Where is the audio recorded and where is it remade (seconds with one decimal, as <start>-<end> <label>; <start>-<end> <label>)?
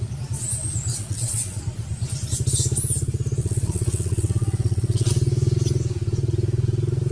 0.0-0.9 recorded; 0.9-1.6 remade; 1.6-3.4 recorded; 3.4-5.1 remade; 5.1-7.1 recorded